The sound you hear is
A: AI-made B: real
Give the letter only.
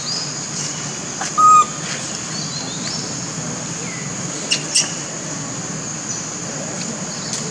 B